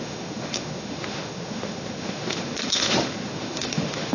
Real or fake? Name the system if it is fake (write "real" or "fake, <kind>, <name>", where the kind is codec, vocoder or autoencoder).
fake, autoencoder, DAC-VAE